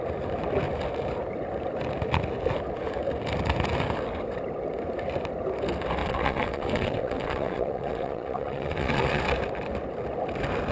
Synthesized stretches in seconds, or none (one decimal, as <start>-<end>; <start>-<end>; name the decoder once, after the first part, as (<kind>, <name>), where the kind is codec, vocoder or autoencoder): 6.0-9.2 (vocoder, WaveNeXt)